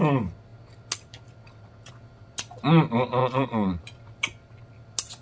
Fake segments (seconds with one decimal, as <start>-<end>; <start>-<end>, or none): 3.2-3.8